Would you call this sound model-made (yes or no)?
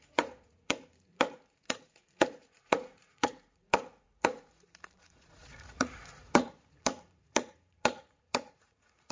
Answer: yes